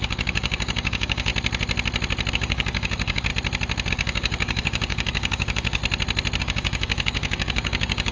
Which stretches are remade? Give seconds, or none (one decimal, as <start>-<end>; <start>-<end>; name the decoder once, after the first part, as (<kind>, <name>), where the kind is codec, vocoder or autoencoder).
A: 0.0-1.3 (codec, DAC); 2.3-3.3; 3.9-5.8; 6.4-8.1